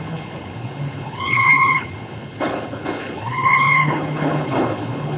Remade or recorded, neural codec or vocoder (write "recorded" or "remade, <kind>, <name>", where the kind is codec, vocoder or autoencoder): remade, codec, HILCodec